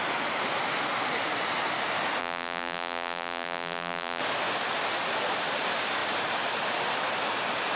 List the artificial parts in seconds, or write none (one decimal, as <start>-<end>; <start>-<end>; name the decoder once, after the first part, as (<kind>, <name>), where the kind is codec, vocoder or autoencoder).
2.2-4.2 (vocoder, BigVGAN v2)